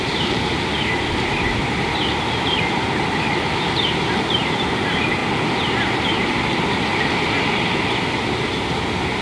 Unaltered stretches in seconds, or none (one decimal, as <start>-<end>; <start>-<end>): 0.7-4.5; 5.2-6.0; 6.9-8.6